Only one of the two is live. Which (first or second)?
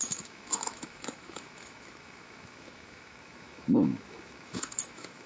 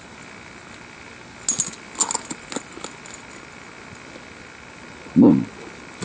second